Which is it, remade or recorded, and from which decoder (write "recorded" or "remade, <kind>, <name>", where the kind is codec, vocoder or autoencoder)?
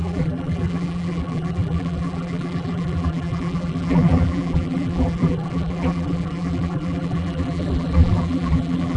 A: remade, vocoder, BigVGAN v2